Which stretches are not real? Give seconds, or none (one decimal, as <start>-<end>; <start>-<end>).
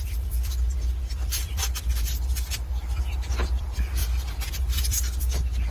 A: 0.0-1.6; 2.5-4.0; 4.5-5.7